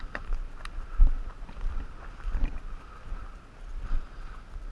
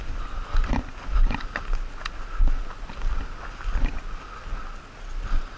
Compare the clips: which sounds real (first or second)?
second